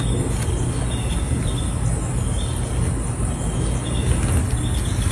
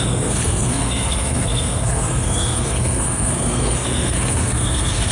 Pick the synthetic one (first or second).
second